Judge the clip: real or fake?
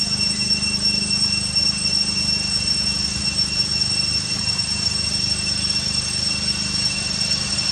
fake